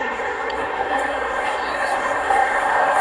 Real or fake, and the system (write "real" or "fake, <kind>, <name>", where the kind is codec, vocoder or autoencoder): fake, codec, SNAC